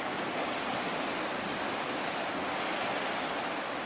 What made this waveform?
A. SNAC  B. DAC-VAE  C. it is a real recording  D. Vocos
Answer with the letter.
C